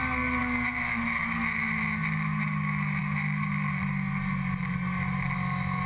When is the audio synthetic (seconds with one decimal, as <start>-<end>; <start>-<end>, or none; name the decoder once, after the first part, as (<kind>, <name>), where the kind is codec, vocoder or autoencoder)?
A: none